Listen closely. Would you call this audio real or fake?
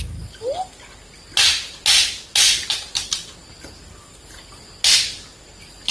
real